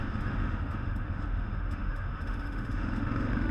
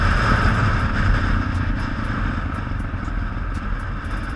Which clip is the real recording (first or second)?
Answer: second